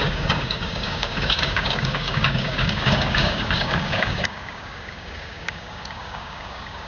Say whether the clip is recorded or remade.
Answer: remade